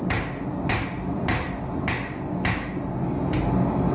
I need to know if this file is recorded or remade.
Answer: recorded